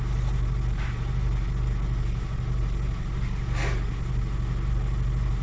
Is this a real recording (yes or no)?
yes